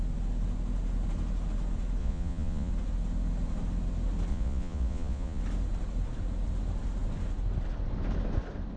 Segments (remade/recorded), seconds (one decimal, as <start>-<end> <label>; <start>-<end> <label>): 0.0-2.0 recorded; 2.0-2.7 remade; 2.7-4.3 recorded; 4.3-5.4 remade; 5.4-8.8 recorded